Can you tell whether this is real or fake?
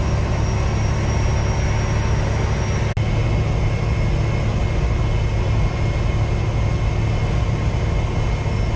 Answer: real